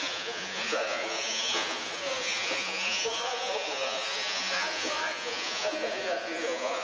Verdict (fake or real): fake